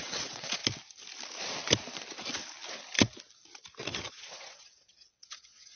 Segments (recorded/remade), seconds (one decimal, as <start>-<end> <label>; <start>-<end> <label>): 0.0-0.6 remade; 0.6-4.1 recorded; 4.1-5.8 remade